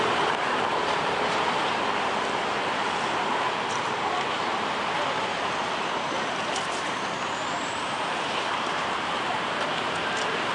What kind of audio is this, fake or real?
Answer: fake